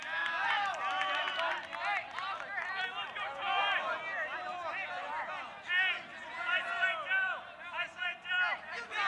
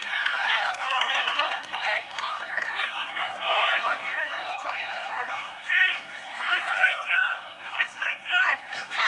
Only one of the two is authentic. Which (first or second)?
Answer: first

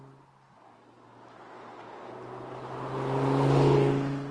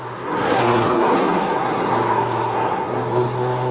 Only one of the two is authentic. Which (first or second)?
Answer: first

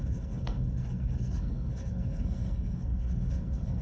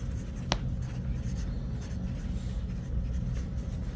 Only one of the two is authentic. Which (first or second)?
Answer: second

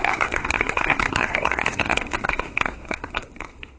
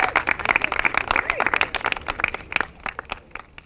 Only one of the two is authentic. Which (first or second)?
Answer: second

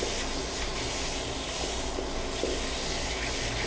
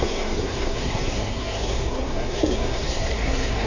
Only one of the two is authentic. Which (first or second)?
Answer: first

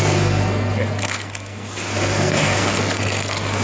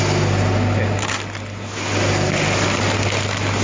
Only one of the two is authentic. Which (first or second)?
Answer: second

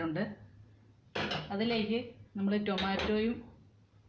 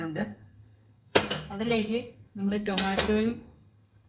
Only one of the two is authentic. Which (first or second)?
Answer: first